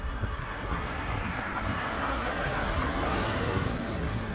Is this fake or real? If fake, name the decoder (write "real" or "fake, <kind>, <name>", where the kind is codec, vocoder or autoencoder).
fake, codec, SNAC